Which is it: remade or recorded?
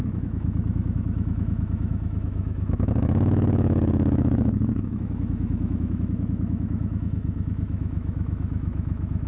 remade